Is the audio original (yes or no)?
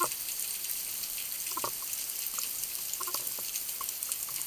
yes